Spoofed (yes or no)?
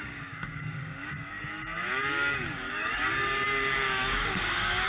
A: yes